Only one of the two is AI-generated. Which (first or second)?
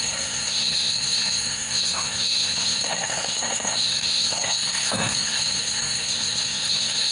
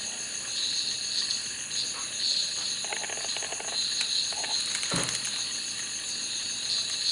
first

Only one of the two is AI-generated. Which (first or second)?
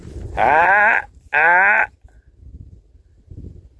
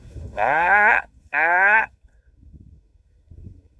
second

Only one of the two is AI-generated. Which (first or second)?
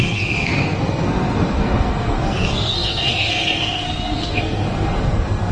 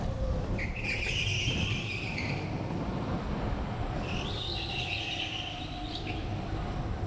first